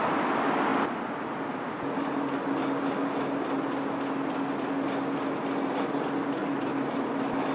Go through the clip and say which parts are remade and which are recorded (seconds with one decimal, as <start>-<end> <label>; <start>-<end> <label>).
0.0-7.5 recorded